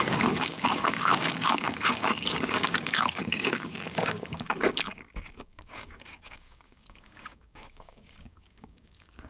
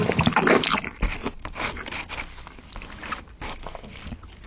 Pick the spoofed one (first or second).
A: first